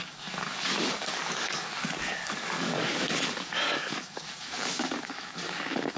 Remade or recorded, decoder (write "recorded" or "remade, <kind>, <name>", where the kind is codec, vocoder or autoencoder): remade, codec, DAC